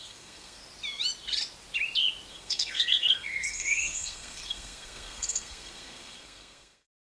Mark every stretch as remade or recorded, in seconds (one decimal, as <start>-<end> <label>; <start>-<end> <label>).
0.0-0.6 remade; 0.6-2.3 recorded; 2.3-7.0 remade